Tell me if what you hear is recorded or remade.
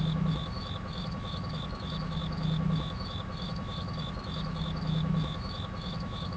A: remade